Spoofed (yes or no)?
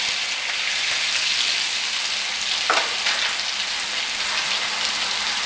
no